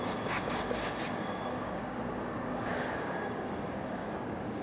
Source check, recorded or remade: remade